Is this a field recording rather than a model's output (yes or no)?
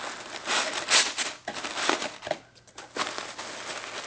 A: yes